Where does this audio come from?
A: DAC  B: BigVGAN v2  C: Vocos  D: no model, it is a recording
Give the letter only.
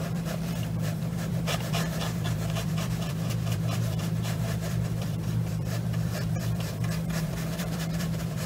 B